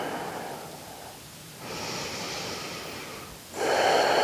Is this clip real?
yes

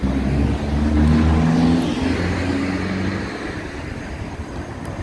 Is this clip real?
yes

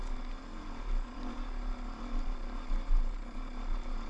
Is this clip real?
yes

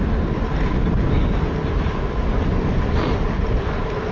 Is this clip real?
yes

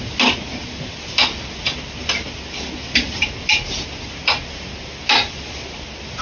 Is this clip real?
yes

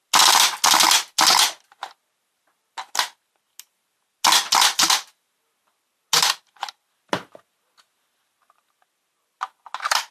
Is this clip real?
yes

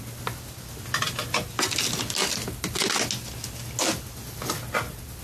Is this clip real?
yes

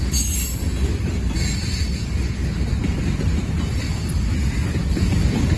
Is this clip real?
yes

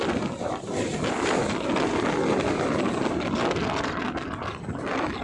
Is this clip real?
yes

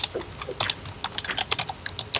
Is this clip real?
yes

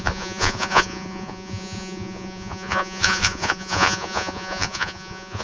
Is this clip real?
no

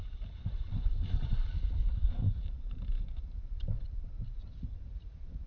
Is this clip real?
no